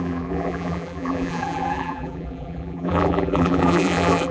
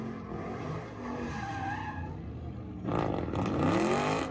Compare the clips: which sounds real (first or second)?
second